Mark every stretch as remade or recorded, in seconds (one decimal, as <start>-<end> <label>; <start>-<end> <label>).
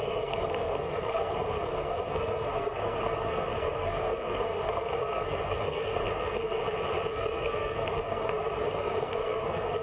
0.0-6.6 remade; 6.6-7.1 recorded; 7.1-9.8 remade